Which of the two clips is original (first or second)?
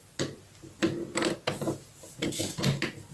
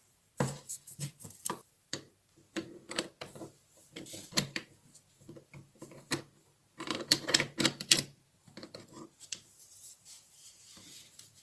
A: first